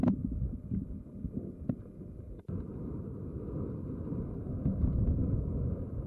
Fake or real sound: real